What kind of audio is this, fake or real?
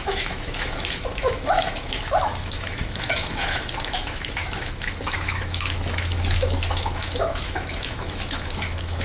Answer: fake